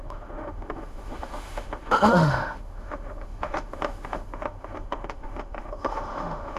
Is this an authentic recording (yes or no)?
no